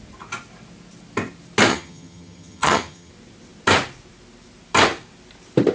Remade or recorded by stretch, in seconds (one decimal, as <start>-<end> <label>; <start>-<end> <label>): 0.0-1.7 recorded; 1.7-3.1 remade; 3.1-5.7 recorded